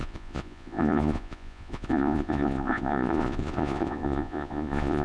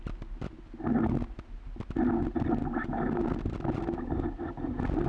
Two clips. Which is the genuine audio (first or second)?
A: second